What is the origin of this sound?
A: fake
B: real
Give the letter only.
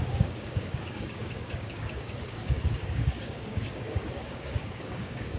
A